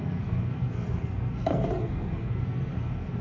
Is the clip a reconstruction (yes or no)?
yes